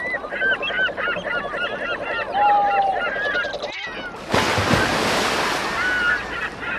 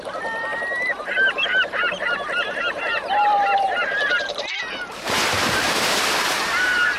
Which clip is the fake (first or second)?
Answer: second